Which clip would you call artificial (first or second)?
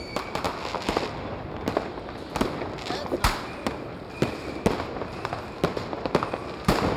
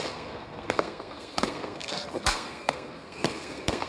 second